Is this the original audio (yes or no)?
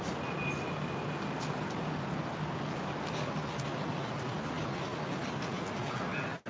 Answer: yes